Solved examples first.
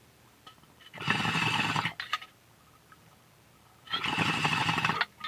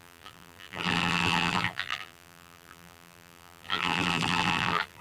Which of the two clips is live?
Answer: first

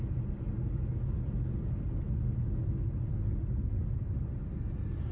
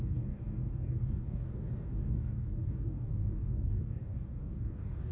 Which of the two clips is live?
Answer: first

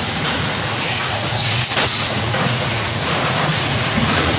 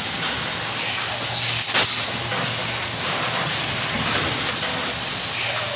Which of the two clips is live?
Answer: second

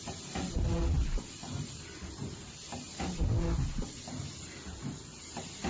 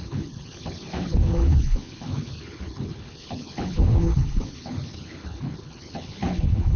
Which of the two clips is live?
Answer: first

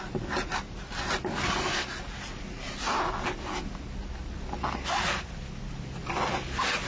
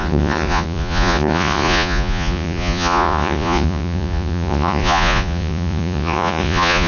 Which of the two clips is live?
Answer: first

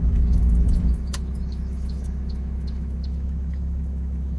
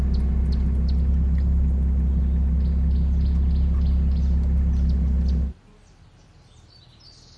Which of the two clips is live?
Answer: second